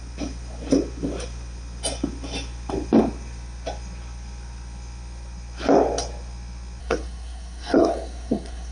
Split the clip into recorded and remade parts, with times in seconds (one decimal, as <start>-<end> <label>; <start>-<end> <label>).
0.0-6.8 recorded; 6.8-8.7 remade

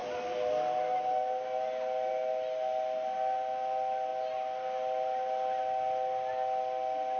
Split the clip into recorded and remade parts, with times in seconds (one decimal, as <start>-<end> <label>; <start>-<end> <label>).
0.0-7.2 recorded

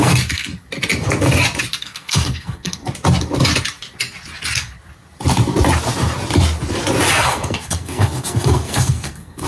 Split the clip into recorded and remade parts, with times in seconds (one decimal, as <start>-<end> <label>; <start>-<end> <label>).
0.0-0.5 remade; 0.5-1.8 recorded; 1.8-2.8 remade; 2.8-7.1 recorded; 7.1-9.5 remade

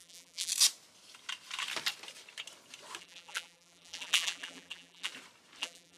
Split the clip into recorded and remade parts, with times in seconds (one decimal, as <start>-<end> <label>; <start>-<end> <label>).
0.0-0.5 remade; 0.5-3.0 recorded; 3.0-5.1 remade; 5.1-5.6 recorded; 5.6-6.0 remade

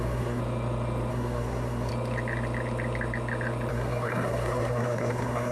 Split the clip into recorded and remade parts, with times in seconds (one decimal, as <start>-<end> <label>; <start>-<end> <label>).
0.0-0.4 remade; 0.4-1.1 recorded; 1.1-1.9 remade; 1.9-3.7 recorded; 3.7-5.5 remade